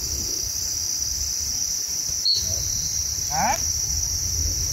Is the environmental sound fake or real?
real